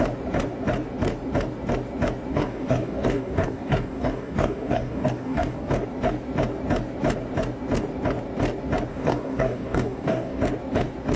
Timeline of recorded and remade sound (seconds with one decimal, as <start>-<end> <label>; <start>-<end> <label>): 0.0-2.3 recorded; 2.3-5.7 remade; 5.7-8.9 recorded; 8.9-10.4 remade; 10.4-11.2 recorded